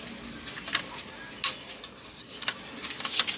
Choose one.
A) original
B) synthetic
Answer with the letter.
A